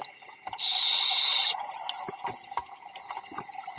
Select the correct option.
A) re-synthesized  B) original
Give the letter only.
B